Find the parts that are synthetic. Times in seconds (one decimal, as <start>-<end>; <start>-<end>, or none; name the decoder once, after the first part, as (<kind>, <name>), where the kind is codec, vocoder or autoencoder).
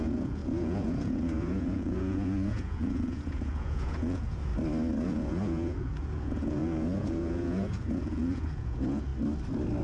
0.0-4.5 (vocoder, Vocos); 5.0-9.1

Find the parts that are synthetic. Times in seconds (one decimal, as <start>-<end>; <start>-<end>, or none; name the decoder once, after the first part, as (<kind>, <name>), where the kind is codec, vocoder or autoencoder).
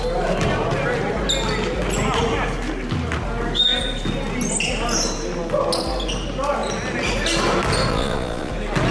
7.9-8.5 (vocoder, Vocos)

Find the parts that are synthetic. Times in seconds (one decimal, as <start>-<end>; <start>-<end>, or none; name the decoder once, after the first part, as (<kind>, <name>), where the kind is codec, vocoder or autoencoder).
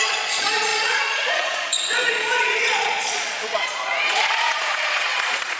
0.0-5.6 (vocoder, Vocos)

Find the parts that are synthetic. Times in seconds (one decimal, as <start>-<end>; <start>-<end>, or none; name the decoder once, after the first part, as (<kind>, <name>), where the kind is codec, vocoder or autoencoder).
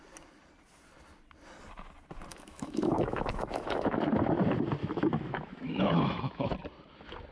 2.3-4.0 (autoencoder, DAC-VAE); 4.8-6.5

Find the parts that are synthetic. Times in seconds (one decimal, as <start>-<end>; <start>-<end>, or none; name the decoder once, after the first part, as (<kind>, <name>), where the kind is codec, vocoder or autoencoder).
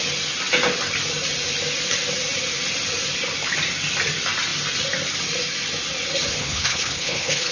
6.4-7.5 (codec, HILCodec)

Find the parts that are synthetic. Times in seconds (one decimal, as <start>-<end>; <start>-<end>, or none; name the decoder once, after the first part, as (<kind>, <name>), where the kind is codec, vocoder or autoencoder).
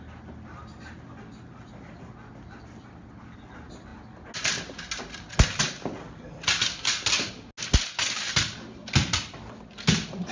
none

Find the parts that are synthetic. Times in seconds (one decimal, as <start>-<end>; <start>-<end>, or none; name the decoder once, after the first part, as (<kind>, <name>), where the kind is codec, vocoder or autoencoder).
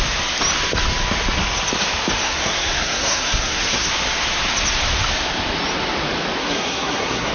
2.2-3.9 (codec, SNAC); 6.4-7.3